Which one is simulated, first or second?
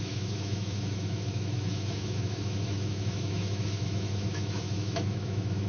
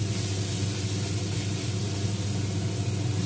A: first